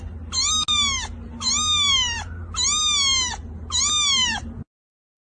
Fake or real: real